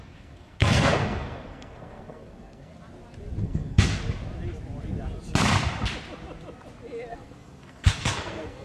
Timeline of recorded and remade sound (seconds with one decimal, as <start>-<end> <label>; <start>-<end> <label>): 0.0-2.7 remade; 2.7-3.4 recorded; 3.4-4.0 remade; 4.0-7.1 recorded; 7.1-8.6 remade